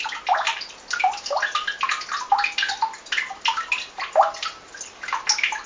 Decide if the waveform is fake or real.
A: real